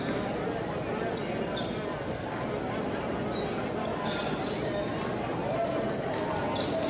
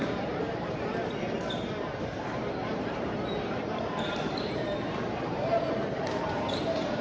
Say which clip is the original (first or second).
first